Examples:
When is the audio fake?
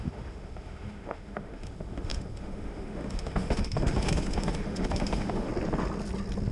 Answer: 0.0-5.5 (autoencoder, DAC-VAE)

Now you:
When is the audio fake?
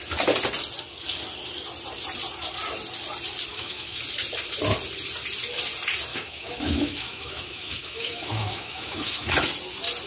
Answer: 3.5-4.0 (autoencoder, DAC-VAE); 6.1-9.3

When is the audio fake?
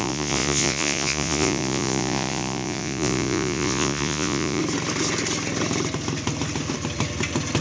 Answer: 0.0-4.6 (vocoder, Vocos)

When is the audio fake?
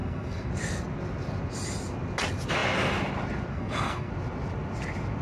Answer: 0.0-0.5 (codec, SNAC); 3.5-4.1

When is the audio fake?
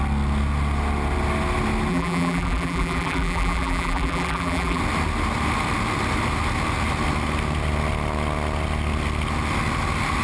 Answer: 1.9-4.8 (vocoder, BigVGAN v2)